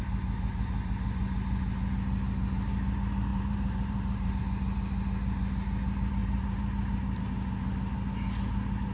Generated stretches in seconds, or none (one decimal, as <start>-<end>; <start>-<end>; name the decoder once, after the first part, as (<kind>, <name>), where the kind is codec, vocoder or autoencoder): 3.3-4.4 (vocoder, BigVGAN v2); 6.2-7.2